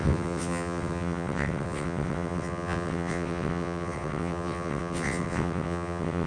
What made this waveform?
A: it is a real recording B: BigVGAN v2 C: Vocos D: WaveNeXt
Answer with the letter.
D